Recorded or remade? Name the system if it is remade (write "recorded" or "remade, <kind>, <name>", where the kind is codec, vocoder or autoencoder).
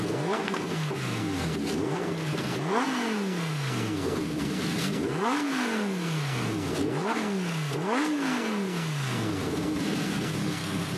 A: remade, codec, SNAC